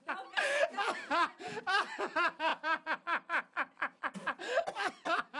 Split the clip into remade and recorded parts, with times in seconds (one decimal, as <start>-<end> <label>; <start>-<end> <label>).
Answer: 0.0-5.4 recorded